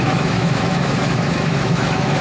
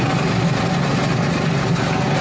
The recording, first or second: second